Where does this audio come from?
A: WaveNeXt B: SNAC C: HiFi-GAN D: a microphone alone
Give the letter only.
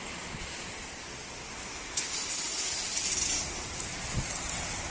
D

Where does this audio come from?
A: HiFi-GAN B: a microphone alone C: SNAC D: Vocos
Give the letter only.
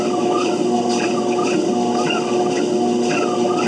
B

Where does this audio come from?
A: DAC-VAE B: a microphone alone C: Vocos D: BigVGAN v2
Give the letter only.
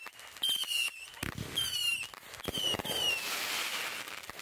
B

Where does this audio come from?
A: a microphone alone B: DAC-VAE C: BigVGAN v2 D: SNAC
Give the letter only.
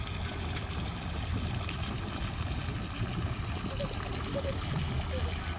A